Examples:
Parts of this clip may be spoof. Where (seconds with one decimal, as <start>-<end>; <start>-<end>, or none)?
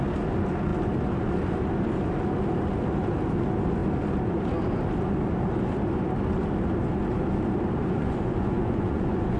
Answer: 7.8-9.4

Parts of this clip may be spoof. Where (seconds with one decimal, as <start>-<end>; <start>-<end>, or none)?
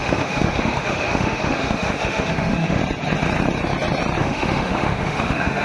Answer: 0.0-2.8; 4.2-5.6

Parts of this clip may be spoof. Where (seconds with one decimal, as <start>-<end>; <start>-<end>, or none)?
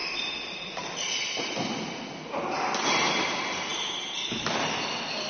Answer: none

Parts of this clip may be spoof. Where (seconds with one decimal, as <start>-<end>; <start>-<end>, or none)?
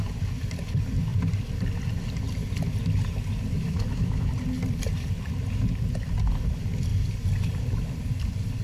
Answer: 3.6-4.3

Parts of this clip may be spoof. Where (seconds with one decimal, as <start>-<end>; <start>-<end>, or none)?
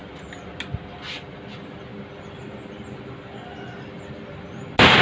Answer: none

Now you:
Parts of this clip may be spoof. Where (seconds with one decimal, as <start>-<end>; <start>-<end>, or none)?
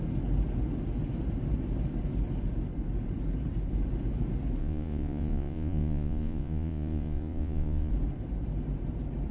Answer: 4.6-7.9